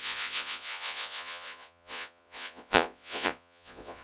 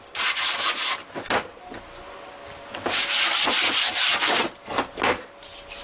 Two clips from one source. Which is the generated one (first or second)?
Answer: first